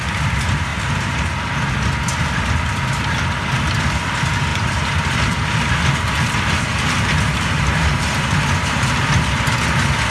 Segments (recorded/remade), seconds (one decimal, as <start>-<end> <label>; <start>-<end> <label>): 0.0-4.5 recorded; 4.5-5.1 remade; 5.1-6.7 recorded; 6.7-9.1 remade; 9.1-10.1 recorded